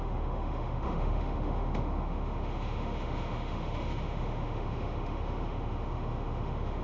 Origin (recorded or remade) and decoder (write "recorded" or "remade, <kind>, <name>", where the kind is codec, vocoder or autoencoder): remade, autoencoder, DAC-VAE